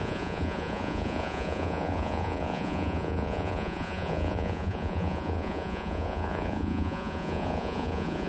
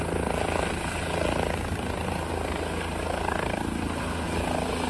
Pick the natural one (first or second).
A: second